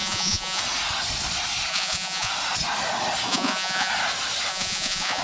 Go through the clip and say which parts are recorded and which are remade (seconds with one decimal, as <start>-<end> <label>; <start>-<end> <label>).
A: 0.0-0.6 remade; 0.6-1.7 recorded; 1.7-2.3 remade; 2.3-3.3 recorded; 3.3-3.9 remade; 3.9-4.5 recorded; 4.5-5.2 remade